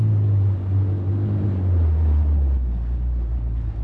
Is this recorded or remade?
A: recorded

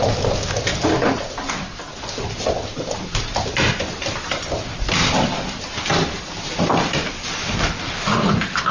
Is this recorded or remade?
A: recorded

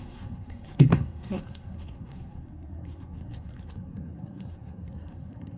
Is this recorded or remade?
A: remade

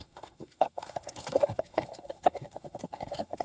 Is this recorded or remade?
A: remade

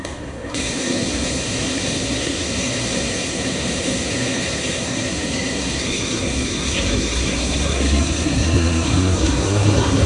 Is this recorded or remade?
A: remade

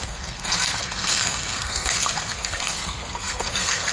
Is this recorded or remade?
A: remade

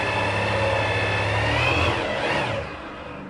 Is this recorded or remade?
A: recorded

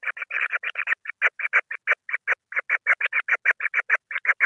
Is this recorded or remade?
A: recorded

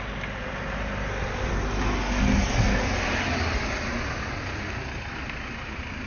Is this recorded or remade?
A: recorded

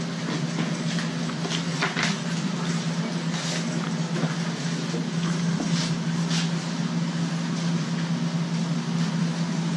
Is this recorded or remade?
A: recorded